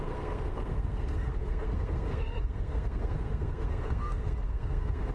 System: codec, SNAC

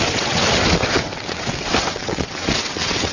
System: vocoder, WaveNeXt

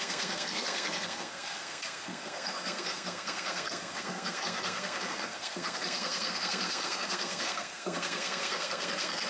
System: codec, SNAC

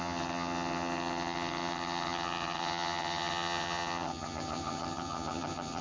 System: vocoder, HiFi-GAN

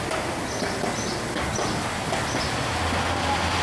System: none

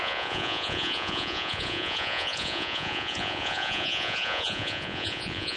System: vocoder, Vocos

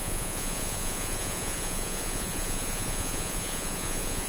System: vocoder, Vocos